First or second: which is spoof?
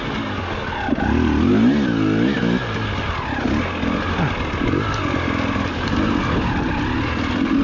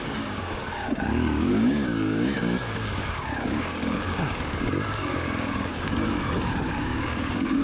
second